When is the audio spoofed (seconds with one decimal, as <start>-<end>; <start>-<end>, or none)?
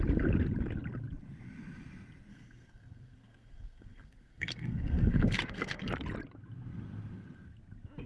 2.3-5.9